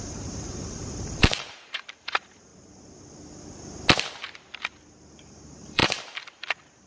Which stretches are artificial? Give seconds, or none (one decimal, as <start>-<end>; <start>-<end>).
0.0-2.5; 5.1-6.9